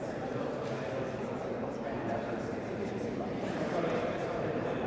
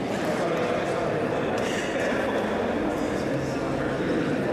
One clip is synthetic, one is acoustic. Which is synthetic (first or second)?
first